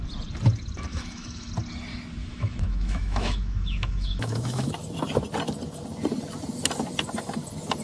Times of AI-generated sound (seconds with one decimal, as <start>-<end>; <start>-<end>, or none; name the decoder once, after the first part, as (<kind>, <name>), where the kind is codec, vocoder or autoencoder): 0.9-1.5 (autoencoder, DAC-VAE); 2.2-4.7